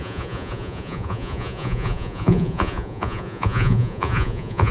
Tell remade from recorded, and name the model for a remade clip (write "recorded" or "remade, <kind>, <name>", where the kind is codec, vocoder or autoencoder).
remade, vocoder, Vocos